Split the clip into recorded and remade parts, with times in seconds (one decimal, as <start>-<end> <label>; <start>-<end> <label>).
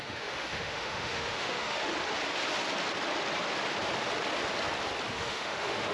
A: 0.0-1.9 remade; 1.9-5.1 recorded; 5.1-5.9 remade